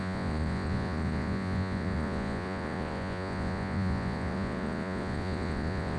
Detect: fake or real fake